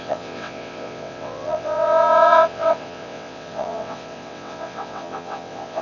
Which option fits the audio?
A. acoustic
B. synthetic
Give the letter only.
B